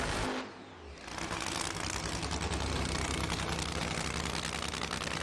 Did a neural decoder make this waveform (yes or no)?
no